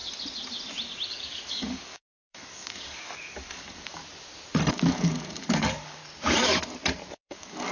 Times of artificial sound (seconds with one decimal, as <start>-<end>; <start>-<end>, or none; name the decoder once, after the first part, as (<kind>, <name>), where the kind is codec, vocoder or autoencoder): 1.1-4.0 (codec, DAC); 4.7-6.0; 7.1-7.7